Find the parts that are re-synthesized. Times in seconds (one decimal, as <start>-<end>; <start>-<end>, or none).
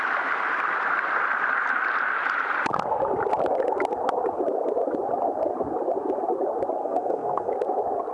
6.8-7.5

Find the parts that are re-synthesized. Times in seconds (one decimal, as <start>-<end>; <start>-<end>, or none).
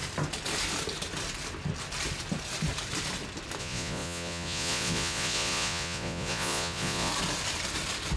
3.6-7.1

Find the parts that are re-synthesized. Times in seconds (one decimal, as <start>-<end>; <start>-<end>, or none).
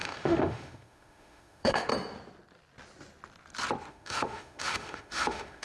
0.0-1.9; 3.9-5.6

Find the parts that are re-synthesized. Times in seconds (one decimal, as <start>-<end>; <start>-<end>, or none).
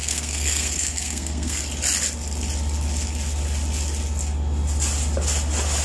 0.0-1.6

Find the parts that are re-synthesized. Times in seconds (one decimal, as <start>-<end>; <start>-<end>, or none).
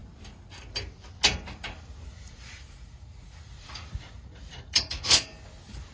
2.1-5.2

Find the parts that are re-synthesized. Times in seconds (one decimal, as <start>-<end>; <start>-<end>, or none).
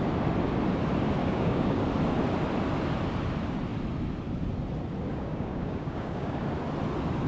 1.2-1.8; 5.1-6.4